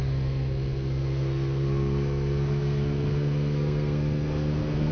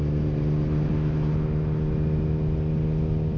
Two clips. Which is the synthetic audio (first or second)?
first